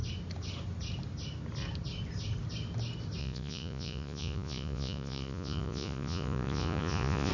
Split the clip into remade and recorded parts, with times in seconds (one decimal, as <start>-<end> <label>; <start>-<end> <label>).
0.0-3.2 recorded; 3.2-7.3 remade